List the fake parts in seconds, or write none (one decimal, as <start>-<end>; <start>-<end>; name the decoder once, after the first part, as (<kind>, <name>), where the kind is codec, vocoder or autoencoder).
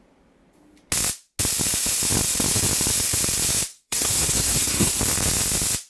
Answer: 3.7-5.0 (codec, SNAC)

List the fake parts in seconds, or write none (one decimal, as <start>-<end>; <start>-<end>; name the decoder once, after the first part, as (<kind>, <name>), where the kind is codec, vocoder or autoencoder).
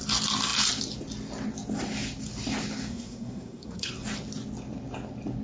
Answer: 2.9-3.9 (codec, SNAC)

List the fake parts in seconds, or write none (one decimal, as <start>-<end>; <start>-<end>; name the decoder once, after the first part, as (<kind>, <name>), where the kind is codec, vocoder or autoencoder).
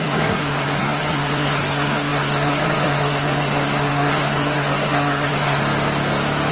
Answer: 0.0-5.6 (codec, SNAC)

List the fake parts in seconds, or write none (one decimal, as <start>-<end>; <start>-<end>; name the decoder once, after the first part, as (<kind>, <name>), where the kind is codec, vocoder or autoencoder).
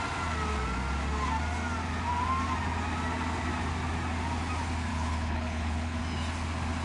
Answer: 4.9-6.0 (codec, HILCodec)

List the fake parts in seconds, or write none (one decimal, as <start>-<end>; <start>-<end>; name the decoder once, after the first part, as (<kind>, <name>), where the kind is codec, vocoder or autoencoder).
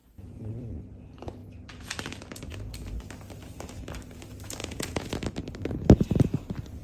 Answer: 0.0-0.5 (vocoder, Vocos); 4.6-5.1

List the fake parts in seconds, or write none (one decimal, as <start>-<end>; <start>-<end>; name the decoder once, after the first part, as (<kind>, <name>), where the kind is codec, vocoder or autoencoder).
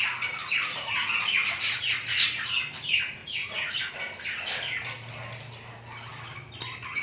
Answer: 0.4-2.2 (vocoder, Vocos); 3.2-3.9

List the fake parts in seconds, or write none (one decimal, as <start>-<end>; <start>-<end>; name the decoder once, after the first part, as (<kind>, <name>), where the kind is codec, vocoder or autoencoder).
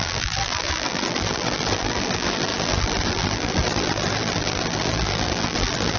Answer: 0.0-6.0 (vocoder, BigVGAN v2)